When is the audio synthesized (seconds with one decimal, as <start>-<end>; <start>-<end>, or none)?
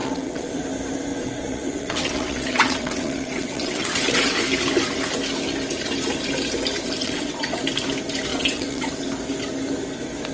0.0-0.6; 1.1-4.4; 7.0-7.6; 8.3-8.9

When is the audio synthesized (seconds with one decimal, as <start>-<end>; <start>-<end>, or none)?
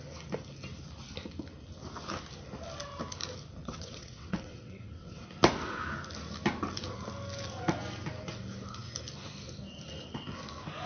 3.6-5.2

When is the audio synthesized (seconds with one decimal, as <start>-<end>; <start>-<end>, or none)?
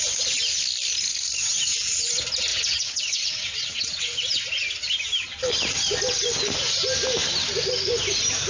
2.5-3.8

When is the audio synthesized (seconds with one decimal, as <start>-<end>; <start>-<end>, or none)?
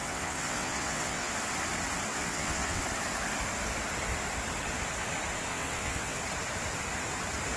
0.0-1.3; 2.1-2.8; 5.5-6.2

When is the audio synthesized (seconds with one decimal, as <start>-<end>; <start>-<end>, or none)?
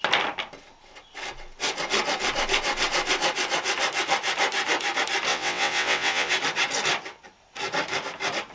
5.3-6.3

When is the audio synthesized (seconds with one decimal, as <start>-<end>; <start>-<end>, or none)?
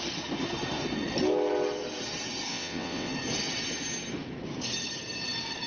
2.5-3.1